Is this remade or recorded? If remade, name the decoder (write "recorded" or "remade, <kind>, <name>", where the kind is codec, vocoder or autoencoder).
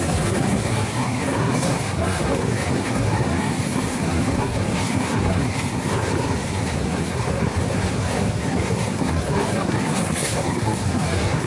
remade, codec, SNAC